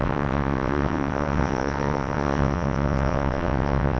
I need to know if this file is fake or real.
fake